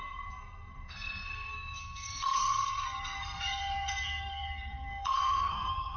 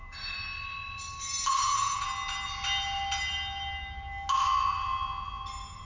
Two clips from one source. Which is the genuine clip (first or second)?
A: second